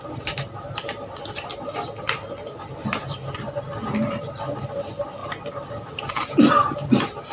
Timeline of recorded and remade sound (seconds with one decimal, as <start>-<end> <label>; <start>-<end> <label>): 0.0-7.3 recorded